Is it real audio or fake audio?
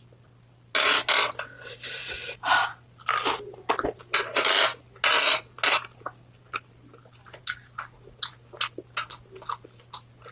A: real